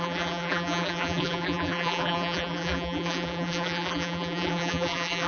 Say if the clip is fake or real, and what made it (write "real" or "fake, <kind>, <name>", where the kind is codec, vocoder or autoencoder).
fake, vocoder, BigVGAN v2